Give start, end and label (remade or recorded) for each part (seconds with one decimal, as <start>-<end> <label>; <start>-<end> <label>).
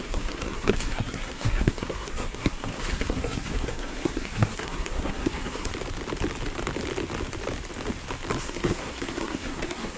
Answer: 0.0-5.7 remade; 5.7-8.4 recorded; 8.4-10.0 remade